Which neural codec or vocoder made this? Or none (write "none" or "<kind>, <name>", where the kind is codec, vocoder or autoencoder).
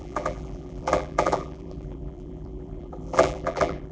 vocoder, BigVGAN v2